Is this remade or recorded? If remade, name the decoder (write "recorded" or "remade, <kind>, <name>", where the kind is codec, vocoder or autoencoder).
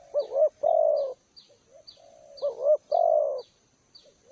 recorded